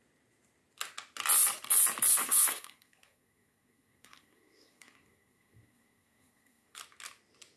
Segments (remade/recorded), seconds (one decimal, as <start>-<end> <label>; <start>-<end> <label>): 0.0-2.2 recorded; 2.2-6.8 remade; 6.8-7.6 recorded